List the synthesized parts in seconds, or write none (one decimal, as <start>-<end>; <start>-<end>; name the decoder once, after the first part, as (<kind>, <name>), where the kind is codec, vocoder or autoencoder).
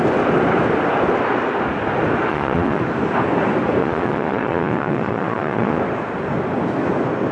2.3-2.8 (vocoder, Vocos); 3.8-5.8